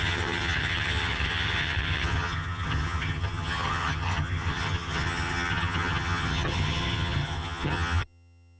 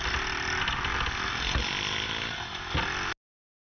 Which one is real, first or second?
second